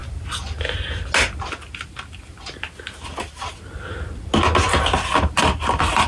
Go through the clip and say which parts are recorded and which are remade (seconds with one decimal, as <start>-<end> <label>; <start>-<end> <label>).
0.0-6.1 recorded